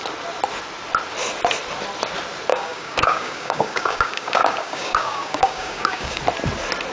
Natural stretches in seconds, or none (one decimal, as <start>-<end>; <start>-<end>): 0.0-2.5; 6.2-6.9